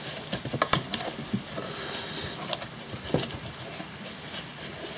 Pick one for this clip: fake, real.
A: real